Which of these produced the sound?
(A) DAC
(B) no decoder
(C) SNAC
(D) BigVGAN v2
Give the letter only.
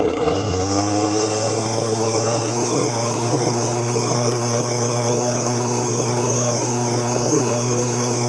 C